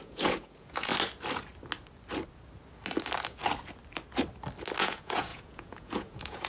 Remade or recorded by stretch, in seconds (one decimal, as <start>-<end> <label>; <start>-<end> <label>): 0.0-0.9 remade; 0.9-4.8 recorded; 4.8-6.5 remade